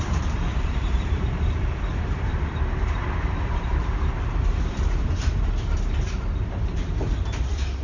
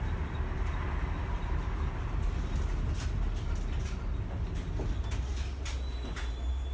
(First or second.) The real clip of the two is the second